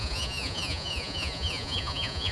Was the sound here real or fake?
fake